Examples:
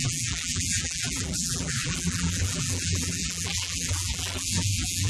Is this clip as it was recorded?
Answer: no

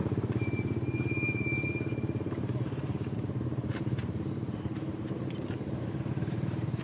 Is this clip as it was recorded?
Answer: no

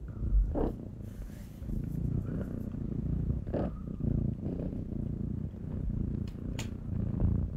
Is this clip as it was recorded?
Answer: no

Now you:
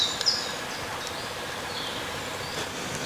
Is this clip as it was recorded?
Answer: yes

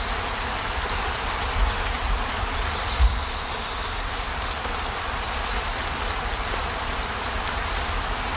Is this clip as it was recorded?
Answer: no